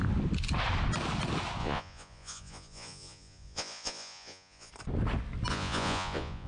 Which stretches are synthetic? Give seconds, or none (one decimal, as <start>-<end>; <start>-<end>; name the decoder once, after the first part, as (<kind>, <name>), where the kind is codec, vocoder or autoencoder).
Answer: 1.6-4.7 (vocoder, Vocos); 5.5-6.5